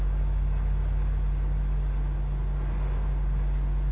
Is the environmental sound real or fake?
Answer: real